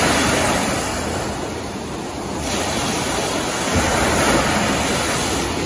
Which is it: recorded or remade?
recorded